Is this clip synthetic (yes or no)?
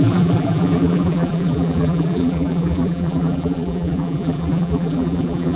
yes